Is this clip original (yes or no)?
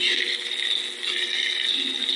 yes